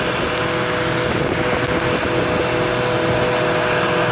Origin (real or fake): real